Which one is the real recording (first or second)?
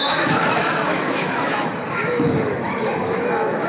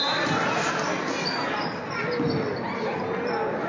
second